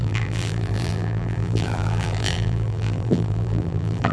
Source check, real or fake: fake